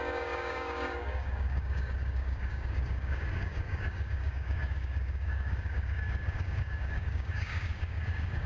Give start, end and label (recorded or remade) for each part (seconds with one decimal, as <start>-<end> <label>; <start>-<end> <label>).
0.0-8.5 remade